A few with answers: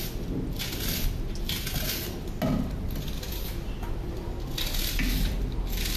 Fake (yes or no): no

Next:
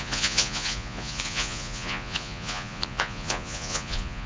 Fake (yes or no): yes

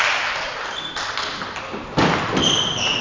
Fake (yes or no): no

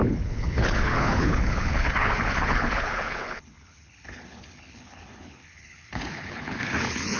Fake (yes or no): yes